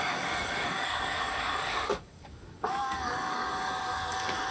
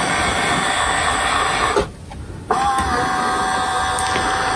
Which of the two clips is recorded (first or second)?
second